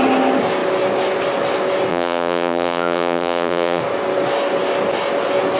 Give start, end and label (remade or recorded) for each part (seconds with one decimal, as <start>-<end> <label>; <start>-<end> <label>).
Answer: 0.0-1.9 recorded; 1.9-3.8 remade; 3.8-5.6 recorded